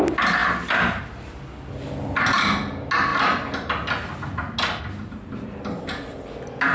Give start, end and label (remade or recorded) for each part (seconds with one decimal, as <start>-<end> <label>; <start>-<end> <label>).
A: 0.0-6.7 recorded